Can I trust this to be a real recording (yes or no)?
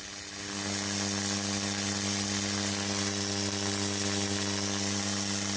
yes